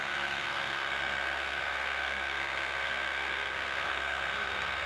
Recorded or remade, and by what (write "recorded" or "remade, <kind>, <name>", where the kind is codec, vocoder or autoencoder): remade, codec, SNAC